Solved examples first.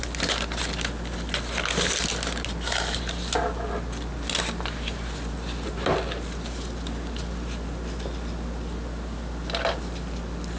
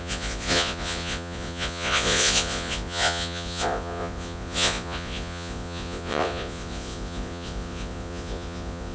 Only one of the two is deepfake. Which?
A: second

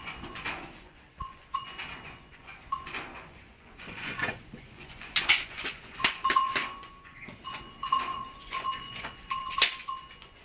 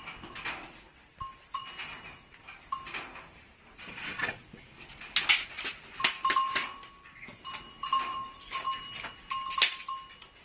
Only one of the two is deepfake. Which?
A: first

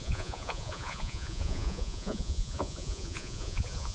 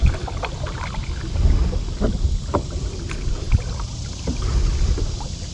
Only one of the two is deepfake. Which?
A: first